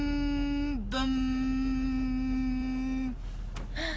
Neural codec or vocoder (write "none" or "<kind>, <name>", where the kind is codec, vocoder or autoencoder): none